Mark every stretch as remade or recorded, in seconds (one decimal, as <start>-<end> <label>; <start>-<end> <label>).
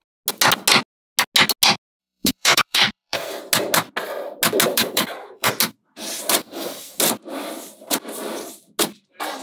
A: 0.0-2.0 recorded; 2.0-3.4 remade; 3.4-4.7 recorded; 4.7-5.5 remade; 5.5-6.4 recorded; 6.4-7.0 remade; 7.0-9.4 recorded